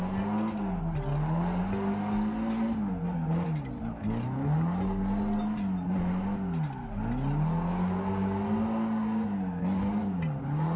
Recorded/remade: recorded